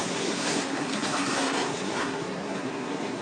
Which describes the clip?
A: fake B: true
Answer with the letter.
A